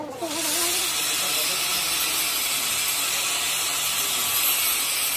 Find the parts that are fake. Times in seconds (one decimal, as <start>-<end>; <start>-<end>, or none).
none